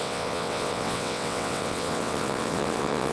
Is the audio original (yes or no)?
no